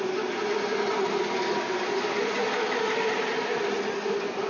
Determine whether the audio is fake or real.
real